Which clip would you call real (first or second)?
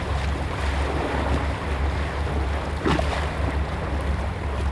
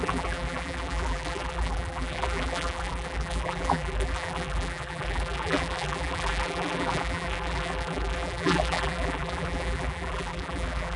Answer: first